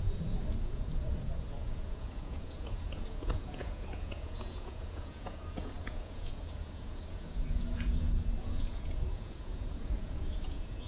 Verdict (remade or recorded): remade